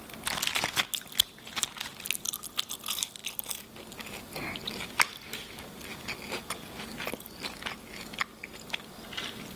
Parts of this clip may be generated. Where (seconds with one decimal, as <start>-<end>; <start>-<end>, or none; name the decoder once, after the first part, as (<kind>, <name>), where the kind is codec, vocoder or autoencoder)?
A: none